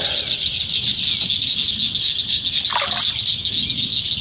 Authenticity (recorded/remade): recorded